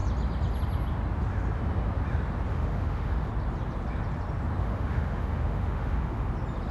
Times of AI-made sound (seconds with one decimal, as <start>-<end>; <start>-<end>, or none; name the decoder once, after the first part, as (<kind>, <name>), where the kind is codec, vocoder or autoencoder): 2.5-3.3 (autoencoder, DAC-VAE); 4.6-6.3